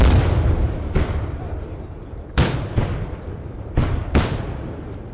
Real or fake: fake